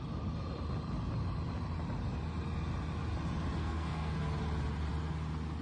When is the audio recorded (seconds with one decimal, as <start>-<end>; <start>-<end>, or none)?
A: 0.0-3.6; 4.2-5.6